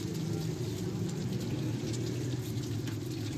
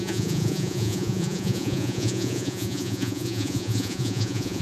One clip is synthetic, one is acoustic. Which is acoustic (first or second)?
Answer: first